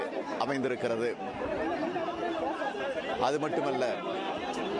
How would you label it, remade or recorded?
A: recorded